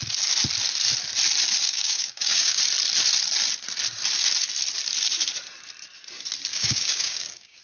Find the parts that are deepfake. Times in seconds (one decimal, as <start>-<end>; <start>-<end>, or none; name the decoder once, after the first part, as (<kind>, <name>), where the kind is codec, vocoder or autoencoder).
1.6-2.6 (codec, DAC); 6.5-7.6